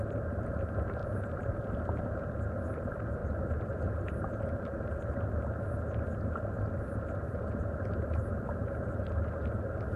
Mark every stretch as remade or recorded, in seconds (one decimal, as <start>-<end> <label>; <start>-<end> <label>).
0.0-1.0 recorded; 1.0-2.0 remade; 2.0-3.2 recorded; 3.2-3.7 remade; 3.7-10.0 recorded